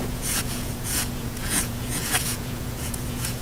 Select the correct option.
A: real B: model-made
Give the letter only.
B